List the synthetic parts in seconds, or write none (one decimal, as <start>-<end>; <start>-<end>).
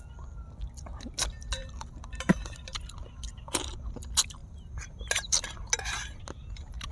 1.6-3.6; 4.4-5.5